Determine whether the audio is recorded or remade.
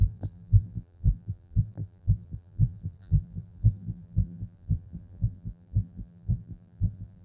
remade